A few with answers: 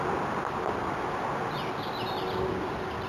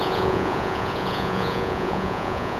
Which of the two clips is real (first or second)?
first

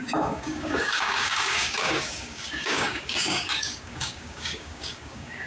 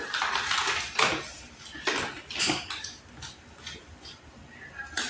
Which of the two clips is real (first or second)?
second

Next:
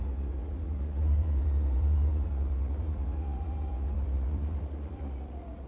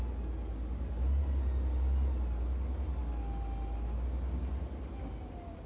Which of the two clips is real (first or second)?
second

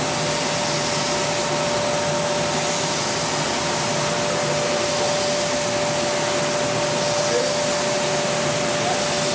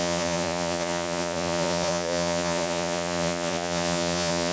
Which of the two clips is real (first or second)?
first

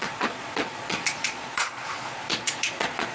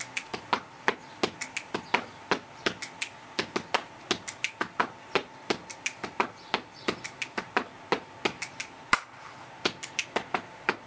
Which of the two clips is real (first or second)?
second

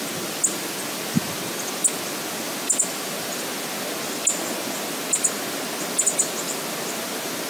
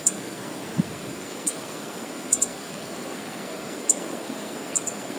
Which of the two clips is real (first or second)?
first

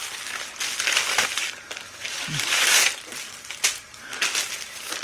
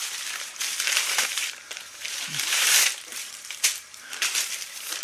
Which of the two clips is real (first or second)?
first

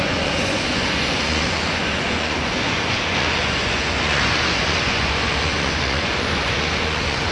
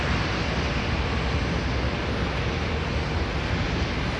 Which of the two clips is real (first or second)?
second